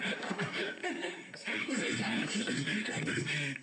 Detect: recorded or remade remade